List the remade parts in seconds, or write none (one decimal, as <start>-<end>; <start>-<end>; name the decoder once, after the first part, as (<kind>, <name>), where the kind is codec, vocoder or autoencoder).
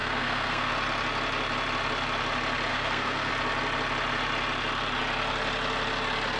0.0-0.7 (codec, SNAC); 2.7-3.3